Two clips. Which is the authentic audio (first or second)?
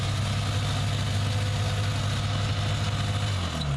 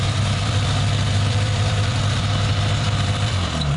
first